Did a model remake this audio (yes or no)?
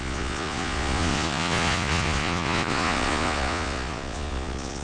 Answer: yes